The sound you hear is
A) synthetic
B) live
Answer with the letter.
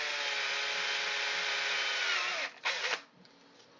B